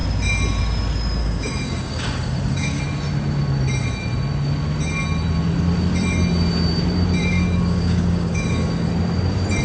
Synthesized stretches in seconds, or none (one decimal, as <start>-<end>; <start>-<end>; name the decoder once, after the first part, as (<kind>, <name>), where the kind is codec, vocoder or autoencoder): 1.2-2.8 (codec, DAC); 7.2-8.9